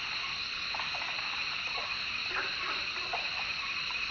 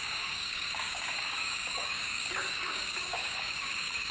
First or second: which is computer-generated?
second